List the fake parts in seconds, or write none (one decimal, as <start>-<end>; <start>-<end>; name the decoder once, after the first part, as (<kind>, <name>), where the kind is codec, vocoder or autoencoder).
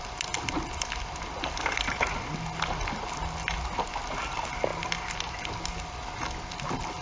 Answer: none